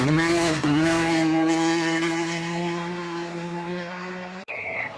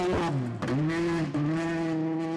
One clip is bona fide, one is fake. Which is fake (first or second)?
first